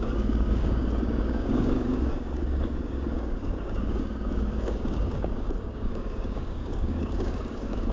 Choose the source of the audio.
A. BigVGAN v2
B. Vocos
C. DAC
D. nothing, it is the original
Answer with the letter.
C